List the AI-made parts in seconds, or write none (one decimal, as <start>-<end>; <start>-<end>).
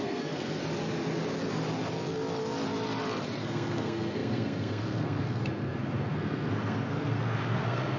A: 0.0-0.6; 3.4-8.0